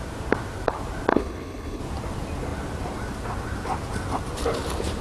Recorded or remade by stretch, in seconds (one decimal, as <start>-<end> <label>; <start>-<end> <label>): 0.0-1.1 recorded; 1.1-1.8 remade; 1.8-5.0 recorded

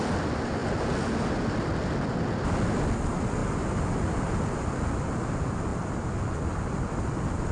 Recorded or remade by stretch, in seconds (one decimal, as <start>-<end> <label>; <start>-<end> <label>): 0.0-7.5 recorded